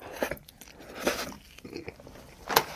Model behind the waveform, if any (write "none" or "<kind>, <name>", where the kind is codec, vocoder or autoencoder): none